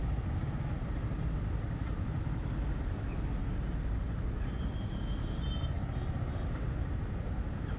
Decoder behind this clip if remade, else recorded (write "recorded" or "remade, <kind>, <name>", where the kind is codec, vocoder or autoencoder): recorded